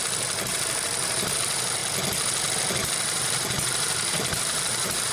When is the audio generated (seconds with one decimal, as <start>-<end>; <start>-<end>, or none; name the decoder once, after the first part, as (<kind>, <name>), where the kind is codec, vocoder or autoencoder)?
0.0-1.8 (vocoder, BigVGAN v2); 2.7-5.1